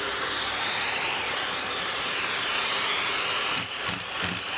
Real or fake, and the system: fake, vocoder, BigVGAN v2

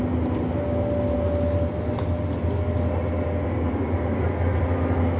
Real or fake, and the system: real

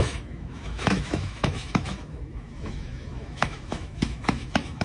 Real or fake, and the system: fake, autoencoder, DAC-VAE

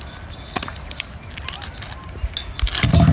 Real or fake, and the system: real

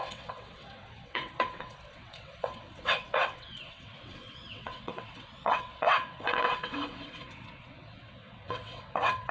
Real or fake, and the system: fake, vocoder, WaveNeXt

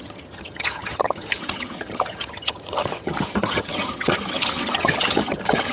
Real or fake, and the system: fake, vocoder, HiFi-GAN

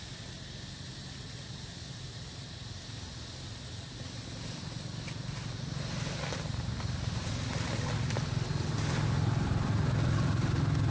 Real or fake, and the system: real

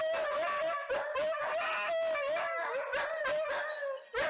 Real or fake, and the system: real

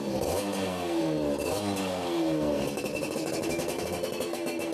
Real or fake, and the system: fake, codec, SNAC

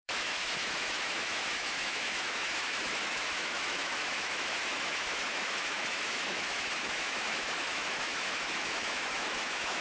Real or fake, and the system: fake, autoencoder, DAC-VAE